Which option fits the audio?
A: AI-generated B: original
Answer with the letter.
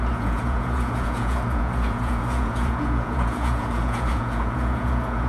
A